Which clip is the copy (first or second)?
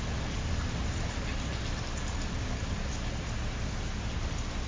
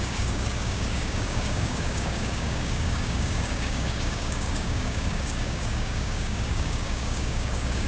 second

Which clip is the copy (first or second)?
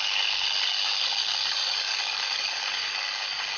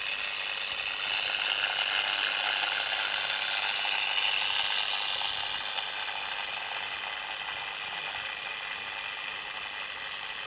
first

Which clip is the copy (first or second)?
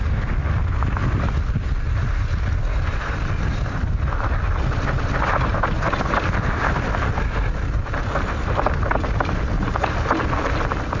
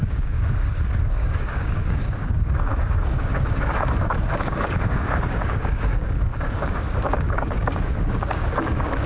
second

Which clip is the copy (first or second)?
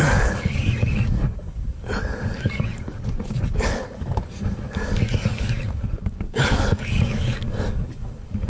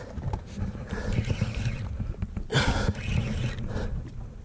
first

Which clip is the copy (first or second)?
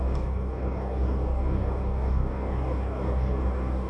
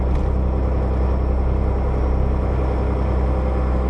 first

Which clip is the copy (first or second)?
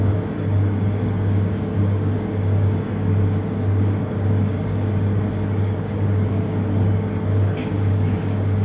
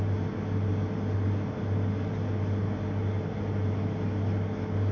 first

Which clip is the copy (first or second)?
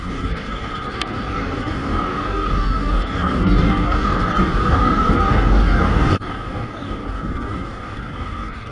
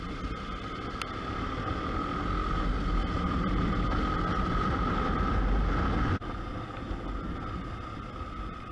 first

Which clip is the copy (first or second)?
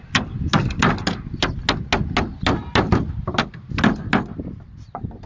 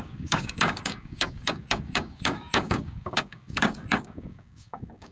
second